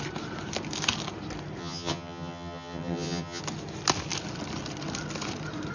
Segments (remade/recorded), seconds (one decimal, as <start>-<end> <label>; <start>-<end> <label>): 0.0-1.6 recorded; 1.6-3.4 remade; 3.4-5.7 recorded